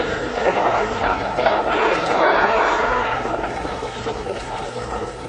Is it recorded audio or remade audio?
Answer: remade